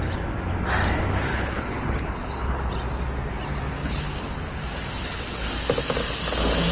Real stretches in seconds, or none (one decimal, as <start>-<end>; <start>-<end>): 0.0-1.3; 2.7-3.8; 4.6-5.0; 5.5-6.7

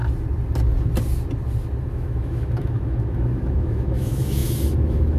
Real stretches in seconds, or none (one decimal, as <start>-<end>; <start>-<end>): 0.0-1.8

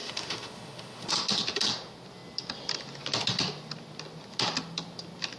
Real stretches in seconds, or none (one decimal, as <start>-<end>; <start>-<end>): 1.1-5.4